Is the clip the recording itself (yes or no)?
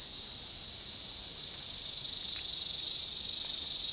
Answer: yes